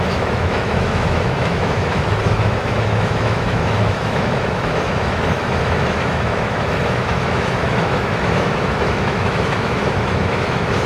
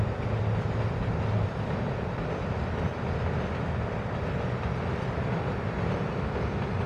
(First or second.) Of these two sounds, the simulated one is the first